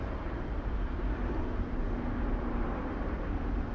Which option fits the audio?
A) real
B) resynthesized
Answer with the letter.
A